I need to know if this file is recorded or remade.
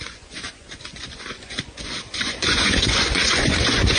remade